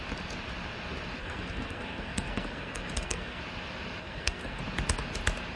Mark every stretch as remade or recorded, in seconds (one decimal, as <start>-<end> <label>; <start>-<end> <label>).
0.0-1.2 recorded; 1.2-3.4 remade; 3.4-4.0 recorded; 4.0-4.6 remade; 4.6-5.6 recorded